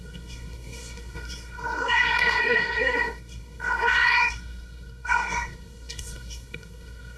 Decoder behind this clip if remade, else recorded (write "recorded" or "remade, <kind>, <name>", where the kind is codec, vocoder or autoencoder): remade, codec, SNAC